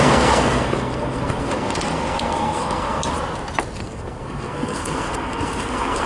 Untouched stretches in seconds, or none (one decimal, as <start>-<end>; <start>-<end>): 3.1-3.8